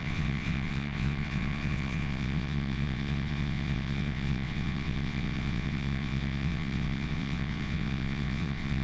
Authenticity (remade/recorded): remade